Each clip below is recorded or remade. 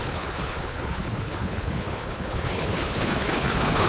remade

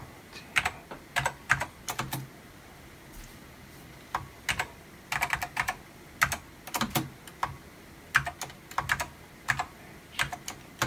recorded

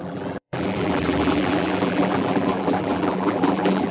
remade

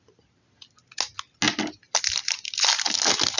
recorded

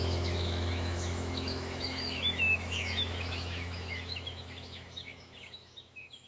remade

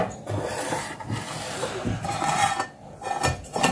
recorded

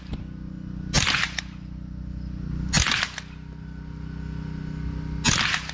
recorded